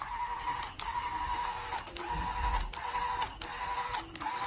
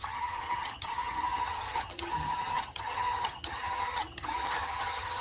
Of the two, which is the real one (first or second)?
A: first